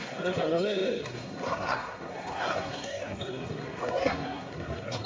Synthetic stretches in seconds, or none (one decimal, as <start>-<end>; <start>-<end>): 0.0-5.1